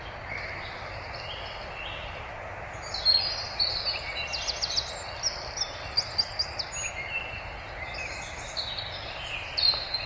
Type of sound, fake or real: real